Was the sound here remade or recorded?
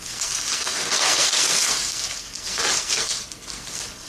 remade